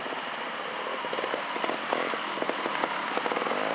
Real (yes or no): yes